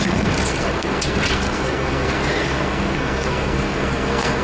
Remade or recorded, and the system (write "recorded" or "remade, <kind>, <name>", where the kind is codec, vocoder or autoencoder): remade, codec, SNAC